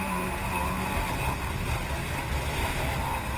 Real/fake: real